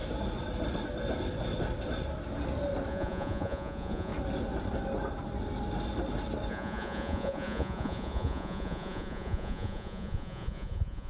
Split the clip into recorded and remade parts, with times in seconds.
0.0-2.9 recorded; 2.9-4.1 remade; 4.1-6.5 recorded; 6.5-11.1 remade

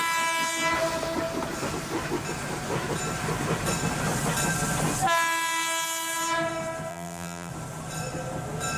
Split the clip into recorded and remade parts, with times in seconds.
0.0-6.9 recorded; 6.9-7.5 remade; 7.5-8.8 recorded

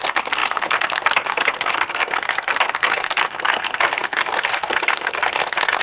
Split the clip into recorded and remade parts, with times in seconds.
0.0-5.8 remade

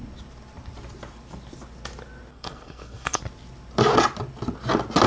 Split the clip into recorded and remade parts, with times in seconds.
0.0-2.3 recorded; 2.3-3.2 remade; 3.2-5.1 recorded

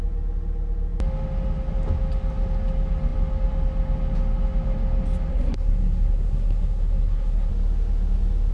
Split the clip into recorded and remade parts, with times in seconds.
0.0-5.3 recorded; 5.3-7.5 remade; 7.5-8.5 recorded